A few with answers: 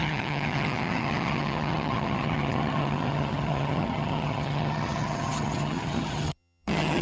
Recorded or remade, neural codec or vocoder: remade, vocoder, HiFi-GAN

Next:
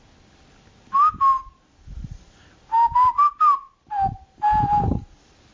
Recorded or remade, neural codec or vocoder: recorded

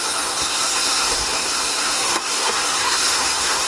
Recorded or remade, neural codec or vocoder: remade, codec, SNAC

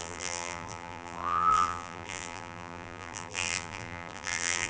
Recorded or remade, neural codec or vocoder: remade, vocoder, BigVGAN v2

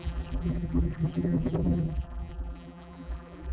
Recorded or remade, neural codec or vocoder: remade, vocoder, BigVGAN v2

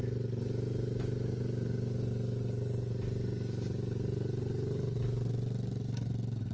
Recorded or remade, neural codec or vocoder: recorded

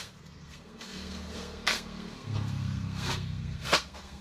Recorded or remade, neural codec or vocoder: remade, codec, SNAC